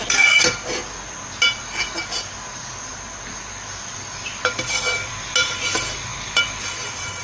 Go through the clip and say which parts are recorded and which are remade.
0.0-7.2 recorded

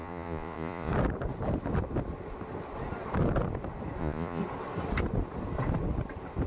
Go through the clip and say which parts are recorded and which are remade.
0.0-0.9 remade; 0.9-4.0 recorded; 4.0-4.4 remade; 4.4-6.5 recorded